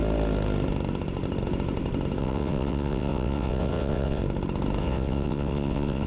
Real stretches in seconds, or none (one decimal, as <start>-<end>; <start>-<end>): 0.0-2.2; 4.2-4.8